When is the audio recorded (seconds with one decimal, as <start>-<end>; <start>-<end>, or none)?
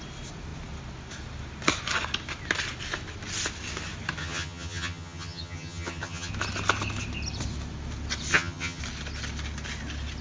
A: 0.0-4.2; 6.3-8.3; 8.8-10.2